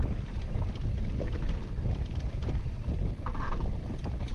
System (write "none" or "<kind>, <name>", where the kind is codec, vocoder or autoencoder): none